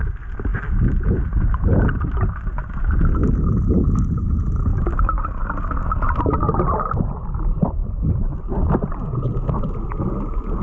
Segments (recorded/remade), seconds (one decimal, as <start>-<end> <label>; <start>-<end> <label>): 0.0-10.6 recorded